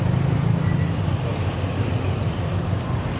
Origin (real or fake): real